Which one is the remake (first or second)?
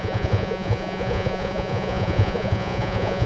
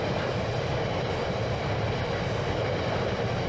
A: first